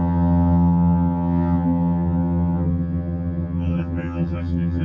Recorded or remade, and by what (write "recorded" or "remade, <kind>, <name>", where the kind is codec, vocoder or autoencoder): remade, vocoder, HiFi-GAN